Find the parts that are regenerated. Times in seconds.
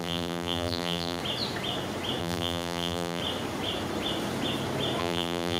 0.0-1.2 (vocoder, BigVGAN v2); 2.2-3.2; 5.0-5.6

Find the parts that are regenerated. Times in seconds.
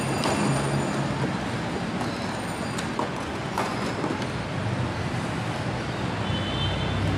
2.9-3.9 (vocoder, Vocos)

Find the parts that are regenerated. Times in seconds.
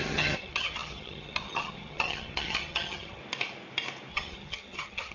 0.0-3.2 (vocoder, HiFi-GAN); 4.1-5.1